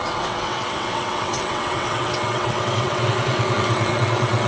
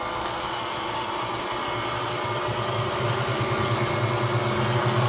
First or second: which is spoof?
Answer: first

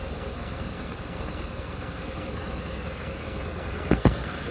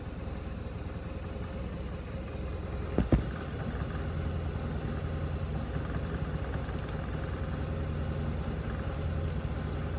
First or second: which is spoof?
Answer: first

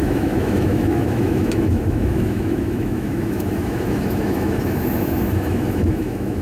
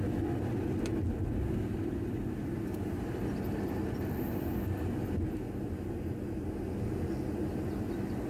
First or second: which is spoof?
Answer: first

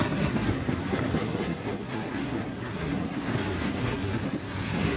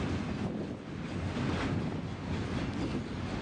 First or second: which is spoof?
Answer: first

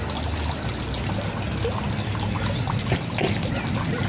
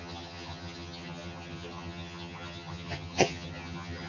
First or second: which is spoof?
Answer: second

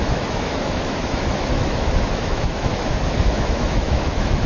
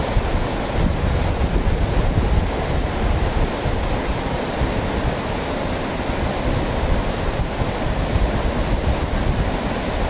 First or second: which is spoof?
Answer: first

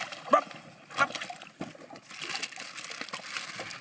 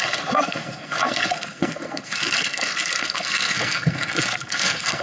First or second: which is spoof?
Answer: second